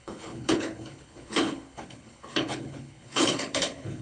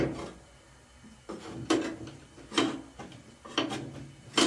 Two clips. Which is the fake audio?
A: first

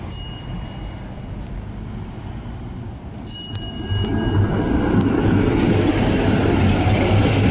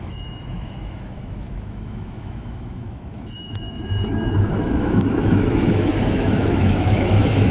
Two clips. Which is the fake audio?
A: second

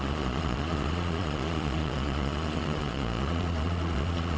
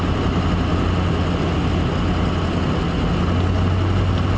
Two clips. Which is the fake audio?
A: first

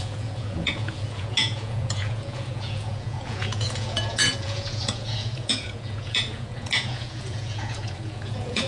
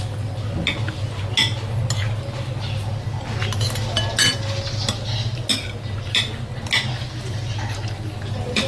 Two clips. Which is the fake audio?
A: first